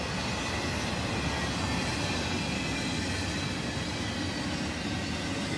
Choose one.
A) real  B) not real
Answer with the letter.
A